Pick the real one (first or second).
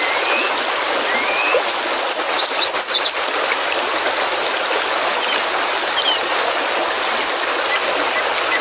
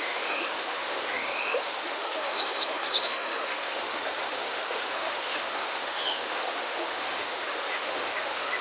first